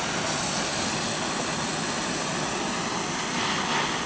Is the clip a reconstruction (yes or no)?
no